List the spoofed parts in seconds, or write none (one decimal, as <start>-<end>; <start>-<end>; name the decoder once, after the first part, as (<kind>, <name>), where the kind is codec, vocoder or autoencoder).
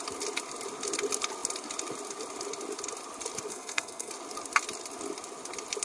3.5-4.1 (codec, SNAC)